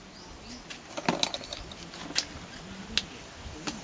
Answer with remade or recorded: recorded